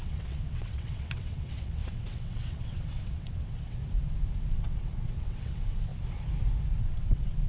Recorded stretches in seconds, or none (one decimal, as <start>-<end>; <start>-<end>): 3.8-4.5; 5.9-6.8